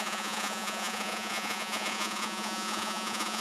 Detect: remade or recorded remade